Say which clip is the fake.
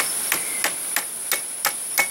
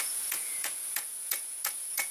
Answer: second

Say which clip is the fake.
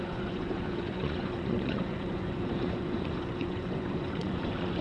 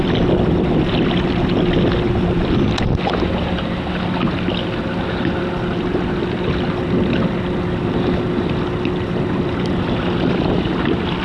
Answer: first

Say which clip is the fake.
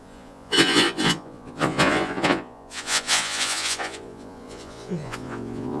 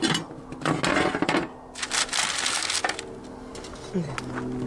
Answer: first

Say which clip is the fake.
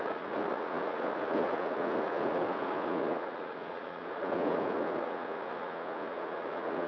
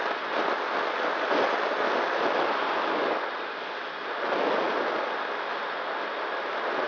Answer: first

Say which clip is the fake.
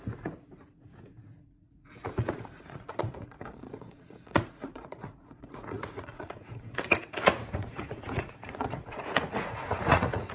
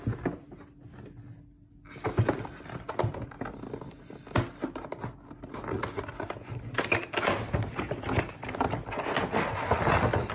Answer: first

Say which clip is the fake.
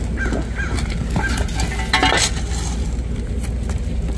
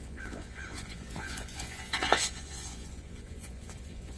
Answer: second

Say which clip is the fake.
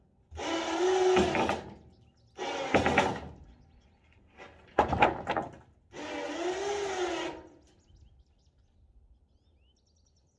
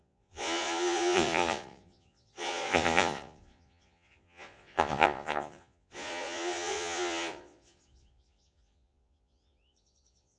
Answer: second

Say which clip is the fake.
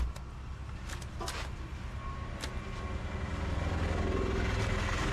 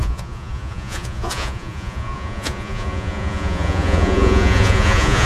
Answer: second